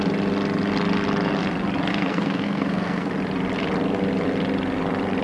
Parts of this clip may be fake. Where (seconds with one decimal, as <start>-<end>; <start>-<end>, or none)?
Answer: 1.9-3.1